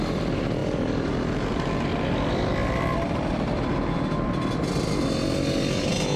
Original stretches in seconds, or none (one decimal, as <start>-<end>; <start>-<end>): 0.0-0.6; 1.1-1.9; 5.0-6.2